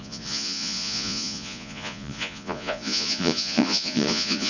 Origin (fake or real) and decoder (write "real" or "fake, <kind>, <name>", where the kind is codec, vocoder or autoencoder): fake, vocoder, Vocos